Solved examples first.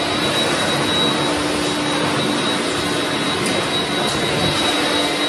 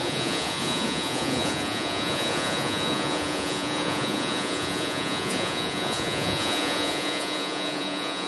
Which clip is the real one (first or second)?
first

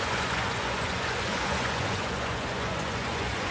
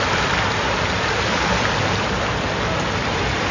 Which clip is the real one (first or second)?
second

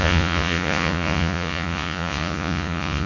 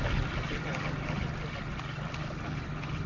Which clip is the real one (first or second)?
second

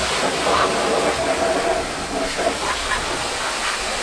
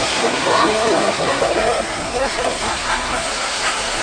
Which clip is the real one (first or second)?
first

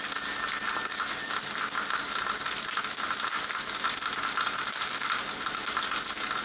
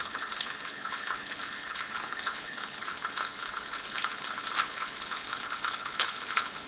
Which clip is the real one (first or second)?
first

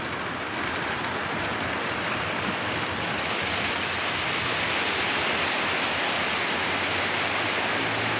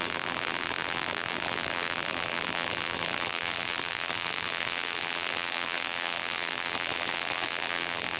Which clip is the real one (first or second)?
first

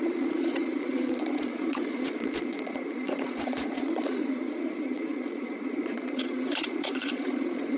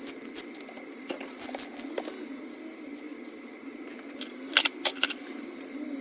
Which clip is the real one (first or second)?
second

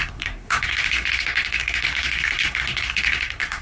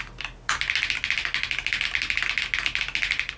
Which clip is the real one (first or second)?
second